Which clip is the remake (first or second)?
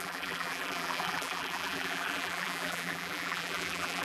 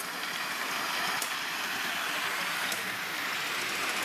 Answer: first